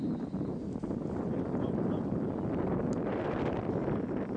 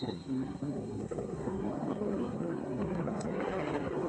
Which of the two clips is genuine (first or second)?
first